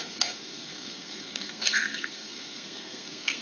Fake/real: fake